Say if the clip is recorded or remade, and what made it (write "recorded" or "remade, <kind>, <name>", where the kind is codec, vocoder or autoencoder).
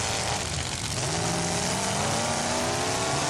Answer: recorded